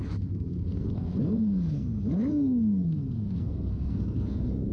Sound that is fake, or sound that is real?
fake